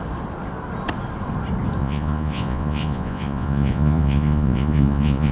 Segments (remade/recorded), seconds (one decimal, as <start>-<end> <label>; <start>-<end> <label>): 0.0-1.8 recorded; 1.8-5.3 remade

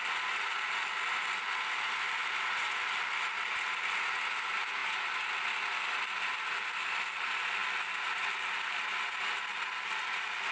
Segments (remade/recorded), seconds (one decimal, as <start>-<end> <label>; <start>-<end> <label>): 0.0-10.5 recorded

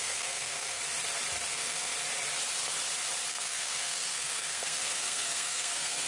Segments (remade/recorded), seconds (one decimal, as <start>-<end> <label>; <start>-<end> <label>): 0.0-0.8 remade; 0.8-1.5 recorded; 1.5-1.9 remade; 1.9-3.3 recorded; 3.3-6.1 remade

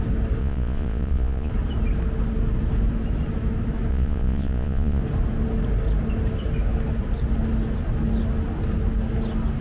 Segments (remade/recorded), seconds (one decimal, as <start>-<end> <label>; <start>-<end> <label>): 0.0-0.4 recorded; 0.4-1.5 remade; 1.5-3.9 recorded; 3.9-5.0 remade; 5.0-9.6 recorded

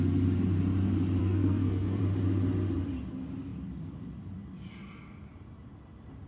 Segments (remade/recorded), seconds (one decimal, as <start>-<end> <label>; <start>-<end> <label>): 0.0-1.2 recorded; 1.2-2.0 remade; 2.0-6.3 recorded

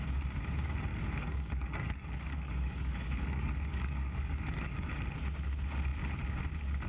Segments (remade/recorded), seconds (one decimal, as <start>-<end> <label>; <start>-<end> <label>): 0.0-0.9 recorded; 0.9-5.0 remade; 5.0-6.9 recorded